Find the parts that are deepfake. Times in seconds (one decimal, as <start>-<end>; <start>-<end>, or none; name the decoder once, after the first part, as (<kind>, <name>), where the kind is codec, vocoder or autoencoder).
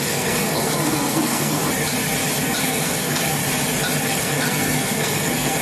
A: 0.0-1.6 (codec, SNAC); 2.6-3.4; 4.0-5.6